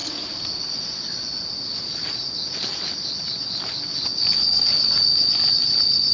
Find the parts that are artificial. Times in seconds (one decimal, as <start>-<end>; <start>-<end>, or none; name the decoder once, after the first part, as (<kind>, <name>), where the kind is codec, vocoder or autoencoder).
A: none